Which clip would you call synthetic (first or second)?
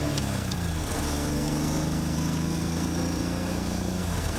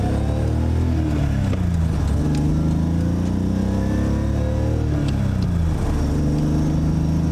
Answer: first